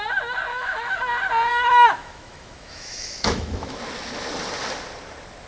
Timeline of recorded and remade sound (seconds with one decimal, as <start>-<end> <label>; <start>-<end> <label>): 0.0-0.5 recorded; 0.5-1.0 remade; 1.0-1.5 recorded; 1.5-3.8 remade; 3.8-5.5 recorded